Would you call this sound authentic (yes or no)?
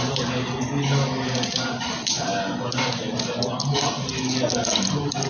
yes